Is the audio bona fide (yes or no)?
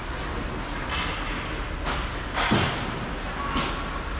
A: yes